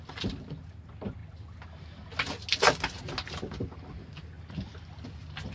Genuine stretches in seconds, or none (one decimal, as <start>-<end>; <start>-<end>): 0.0-5.5